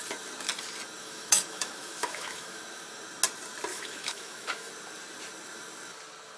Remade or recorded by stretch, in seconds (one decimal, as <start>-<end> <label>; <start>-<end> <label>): 0.0-1.0 recorded; 1.0-2.6 remade; 2.6-3.7 recorded; 3.7-4.7 remade; 4.7-6.4 recorded